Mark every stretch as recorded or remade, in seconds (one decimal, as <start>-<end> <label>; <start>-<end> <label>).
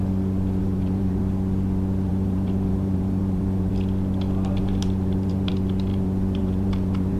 0.0-0.6 recorded; 0.6-1.2 remade; 1.2-2.1 recorded; 2.1-3.7 remade; 3.7-4.6 recorded; 4.6-5.5 remade; 5.5-5.9 recorded; 5.9-7.2 remade